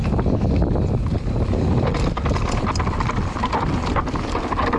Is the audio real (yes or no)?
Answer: yes